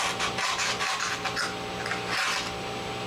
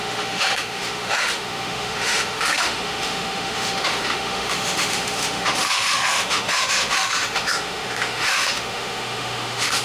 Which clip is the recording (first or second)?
first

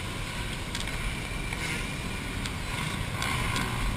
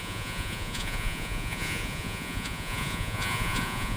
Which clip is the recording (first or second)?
first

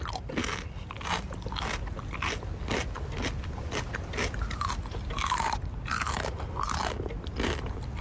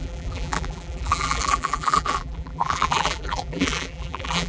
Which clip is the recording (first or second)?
first